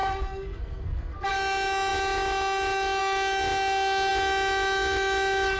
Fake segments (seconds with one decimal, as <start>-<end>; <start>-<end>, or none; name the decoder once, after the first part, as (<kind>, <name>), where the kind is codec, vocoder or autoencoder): 0.0-1.3 (codec, SNAC)